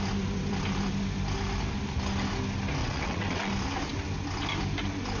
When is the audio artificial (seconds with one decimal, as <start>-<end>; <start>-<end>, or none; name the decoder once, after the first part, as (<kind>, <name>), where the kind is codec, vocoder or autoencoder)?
2.8-3.5 (vocoder, WaveNeXt)